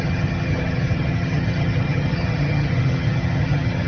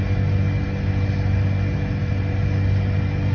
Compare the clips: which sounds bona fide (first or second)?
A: second